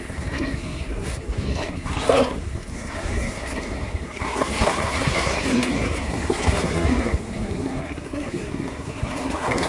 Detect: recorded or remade remade